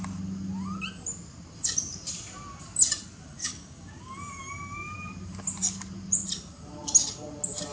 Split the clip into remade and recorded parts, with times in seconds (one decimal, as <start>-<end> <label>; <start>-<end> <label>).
0.0-3.4 recorded; 3.4-4.1 remade; 4.1-7.7 recorded